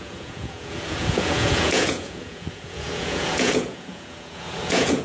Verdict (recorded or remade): remade